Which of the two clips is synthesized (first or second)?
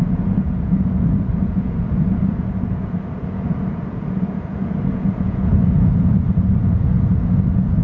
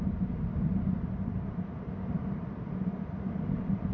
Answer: first